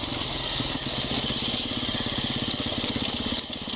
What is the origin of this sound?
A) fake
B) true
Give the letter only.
B